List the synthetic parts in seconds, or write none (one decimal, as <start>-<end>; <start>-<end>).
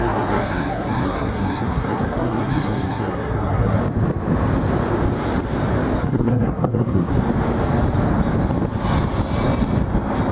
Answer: 0.0-3.8; 6.0-7.1